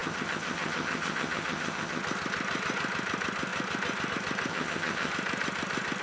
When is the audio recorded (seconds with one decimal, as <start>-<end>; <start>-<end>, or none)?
2.0-4.5; 5.1-6.0